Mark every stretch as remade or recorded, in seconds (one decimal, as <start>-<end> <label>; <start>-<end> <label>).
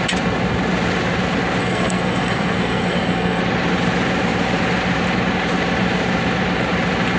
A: 0.0-1.6 recorded; 1.6-3.4 remade; 3.4-7.2 recorded